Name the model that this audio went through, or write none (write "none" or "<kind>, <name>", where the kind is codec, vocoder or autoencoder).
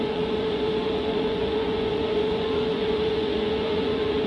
vocoder, Vocos